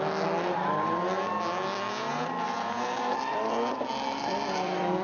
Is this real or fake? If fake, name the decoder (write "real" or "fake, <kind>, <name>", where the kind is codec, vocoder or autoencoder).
real